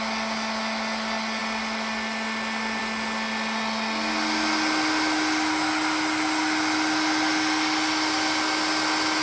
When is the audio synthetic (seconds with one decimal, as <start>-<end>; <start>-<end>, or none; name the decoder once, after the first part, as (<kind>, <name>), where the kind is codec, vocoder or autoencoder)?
none